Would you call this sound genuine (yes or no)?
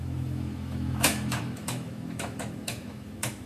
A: no